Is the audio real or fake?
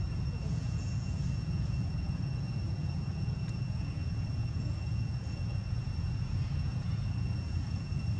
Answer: fake